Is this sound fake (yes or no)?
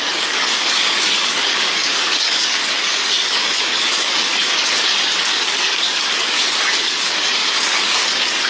yes